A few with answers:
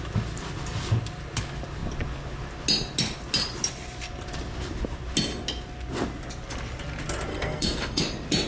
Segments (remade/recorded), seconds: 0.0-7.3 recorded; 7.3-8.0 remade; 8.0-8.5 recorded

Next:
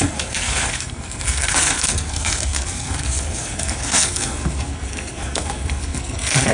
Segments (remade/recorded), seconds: 0.0-6.5 remade